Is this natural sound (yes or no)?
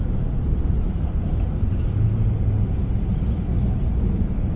yes